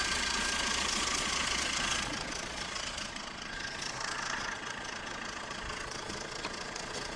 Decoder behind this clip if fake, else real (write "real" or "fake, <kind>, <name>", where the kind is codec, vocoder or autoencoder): fake, vocoder, Vocos